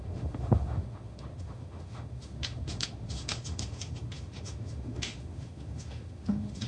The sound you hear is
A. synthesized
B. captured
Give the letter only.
A